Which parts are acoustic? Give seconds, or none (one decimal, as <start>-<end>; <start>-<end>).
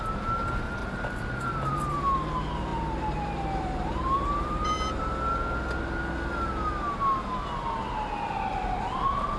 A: 0.0-0.8; 2.0-2.7; 5.0-9.4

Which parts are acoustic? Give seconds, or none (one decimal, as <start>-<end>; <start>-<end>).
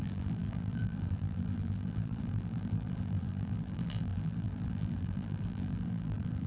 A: none